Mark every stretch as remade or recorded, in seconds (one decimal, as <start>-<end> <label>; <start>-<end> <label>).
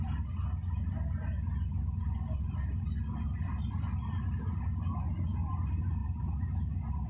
0.0-7.1 recorded